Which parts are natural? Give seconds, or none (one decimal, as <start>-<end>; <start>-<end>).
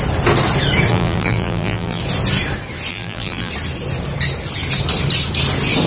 0.0-0.9; 2.0-2.9; 3.5-5.9